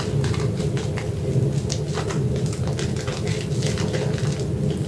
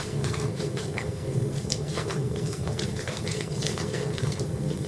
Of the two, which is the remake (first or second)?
second